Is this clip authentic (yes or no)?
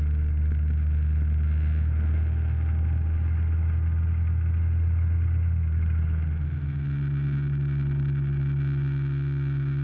yes